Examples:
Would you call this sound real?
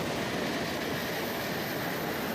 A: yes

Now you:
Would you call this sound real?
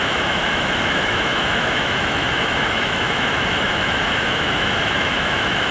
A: no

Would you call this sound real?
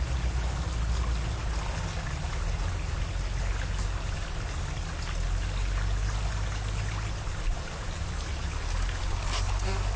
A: yes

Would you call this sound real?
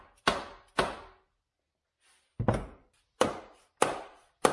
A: yes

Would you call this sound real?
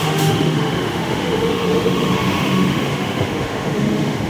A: no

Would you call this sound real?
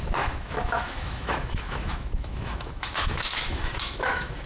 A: no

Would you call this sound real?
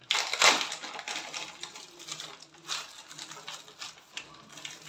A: yes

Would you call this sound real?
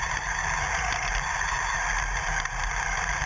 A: yes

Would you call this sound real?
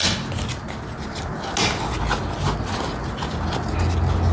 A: yes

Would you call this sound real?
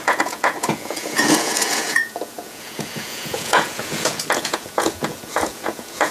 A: no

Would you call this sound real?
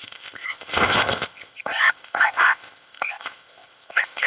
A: no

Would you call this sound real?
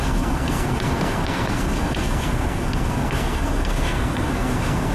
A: no